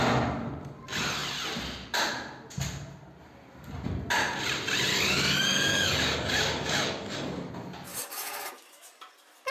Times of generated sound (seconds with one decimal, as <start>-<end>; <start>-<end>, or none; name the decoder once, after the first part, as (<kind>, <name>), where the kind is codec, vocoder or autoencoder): 4.9-7.5 (codec, DAC); 7.9-8.5